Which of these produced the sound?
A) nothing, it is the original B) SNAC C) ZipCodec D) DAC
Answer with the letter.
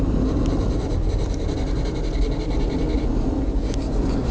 A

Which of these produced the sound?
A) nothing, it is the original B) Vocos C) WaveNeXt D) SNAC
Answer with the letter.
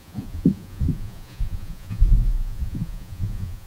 B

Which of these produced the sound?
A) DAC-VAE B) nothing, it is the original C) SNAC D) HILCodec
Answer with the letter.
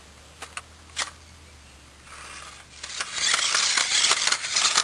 B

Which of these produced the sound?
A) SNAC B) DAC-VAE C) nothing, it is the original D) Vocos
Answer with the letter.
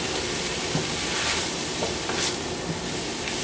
C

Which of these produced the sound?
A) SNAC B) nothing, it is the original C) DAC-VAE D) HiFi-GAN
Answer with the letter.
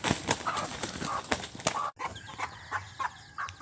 B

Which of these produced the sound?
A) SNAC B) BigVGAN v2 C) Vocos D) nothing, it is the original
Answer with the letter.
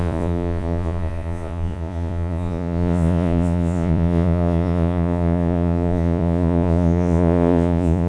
C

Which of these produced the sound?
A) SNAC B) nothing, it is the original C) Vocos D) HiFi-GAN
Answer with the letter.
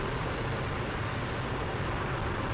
B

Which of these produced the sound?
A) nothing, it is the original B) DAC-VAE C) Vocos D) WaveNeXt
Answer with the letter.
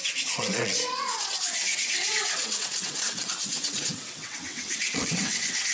D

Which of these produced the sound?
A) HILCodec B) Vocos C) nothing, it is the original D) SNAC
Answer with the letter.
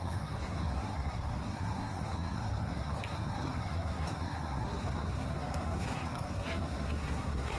D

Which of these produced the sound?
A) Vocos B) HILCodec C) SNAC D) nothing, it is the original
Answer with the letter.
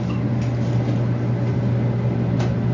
D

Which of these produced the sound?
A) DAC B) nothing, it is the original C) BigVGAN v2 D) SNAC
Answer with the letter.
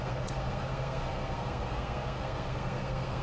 D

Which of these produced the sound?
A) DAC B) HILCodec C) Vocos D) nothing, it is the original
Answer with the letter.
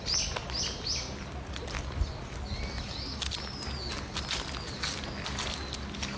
D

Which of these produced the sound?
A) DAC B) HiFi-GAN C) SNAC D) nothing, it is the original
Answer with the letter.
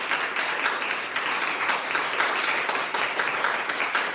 D